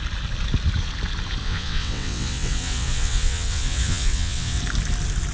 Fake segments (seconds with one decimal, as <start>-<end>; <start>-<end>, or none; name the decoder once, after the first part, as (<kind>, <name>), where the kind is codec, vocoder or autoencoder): 1.4-4.6 (vocoder, WaveNeXt)